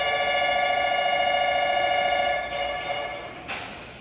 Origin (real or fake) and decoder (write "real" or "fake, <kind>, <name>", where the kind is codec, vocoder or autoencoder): real